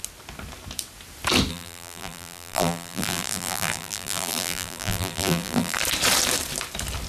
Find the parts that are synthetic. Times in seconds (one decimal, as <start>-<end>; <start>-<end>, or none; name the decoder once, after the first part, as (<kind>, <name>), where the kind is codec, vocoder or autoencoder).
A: 1.5-5.8 (vocoder, BigVGAN v2)